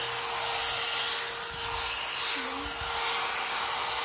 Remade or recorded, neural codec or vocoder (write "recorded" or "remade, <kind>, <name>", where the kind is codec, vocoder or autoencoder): recorded